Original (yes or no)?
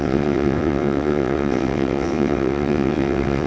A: no